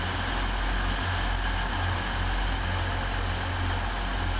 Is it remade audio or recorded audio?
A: recorded